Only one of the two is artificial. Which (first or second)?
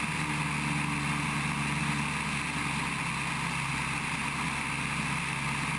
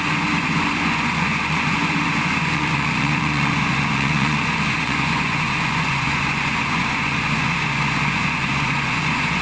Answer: second